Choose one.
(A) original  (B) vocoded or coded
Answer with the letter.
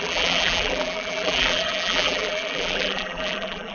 B